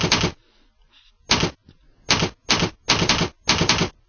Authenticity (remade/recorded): recorded